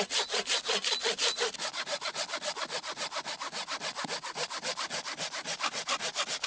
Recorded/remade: recorded